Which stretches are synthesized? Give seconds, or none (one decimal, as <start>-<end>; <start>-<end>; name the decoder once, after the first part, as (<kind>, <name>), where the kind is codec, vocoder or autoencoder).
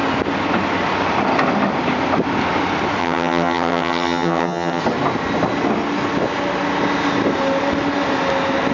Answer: 3.0-4.8 (vocoder, HiFi-GAN)